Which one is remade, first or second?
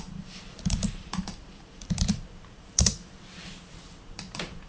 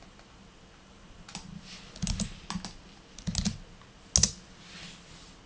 first